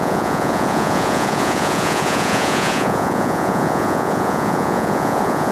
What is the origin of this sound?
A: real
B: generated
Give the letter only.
B